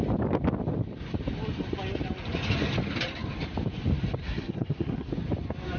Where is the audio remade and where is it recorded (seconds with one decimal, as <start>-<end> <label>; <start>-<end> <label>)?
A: 0.0-4.2 recorded; 4.2-5.1 remade; 5.1-5.8 recorded